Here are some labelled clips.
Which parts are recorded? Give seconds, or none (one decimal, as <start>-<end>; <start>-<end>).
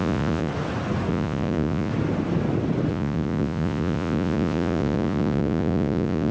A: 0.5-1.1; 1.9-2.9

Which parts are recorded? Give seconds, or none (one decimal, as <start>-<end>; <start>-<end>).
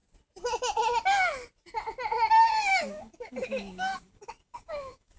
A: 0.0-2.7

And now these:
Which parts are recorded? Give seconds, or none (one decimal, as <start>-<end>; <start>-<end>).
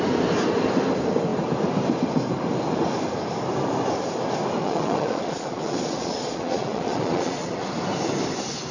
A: 0.0-4.6; 7.6-8.7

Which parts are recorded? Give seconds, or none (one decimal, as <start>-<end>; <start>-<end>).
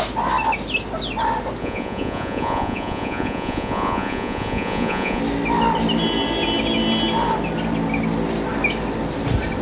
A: 0.0-1.6; 5.2-9.6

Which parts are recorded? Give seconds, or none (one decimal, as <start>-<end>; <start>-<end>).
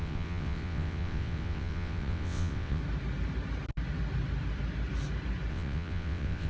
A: 2.8-5.5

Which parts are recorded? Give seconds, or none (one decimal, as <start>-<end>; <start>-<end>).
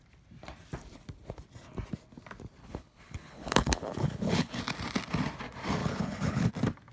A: 0.0-2.6; 4.6-5.8; 6.5-6.9